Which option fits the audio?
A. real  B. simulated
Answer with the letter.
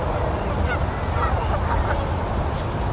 A